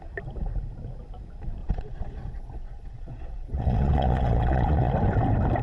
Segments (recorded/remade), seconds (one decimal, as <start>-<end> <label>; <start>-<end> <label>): 0.0-1.6 recorded; 1.6-4.9 remade; 4.9-5.6 recorded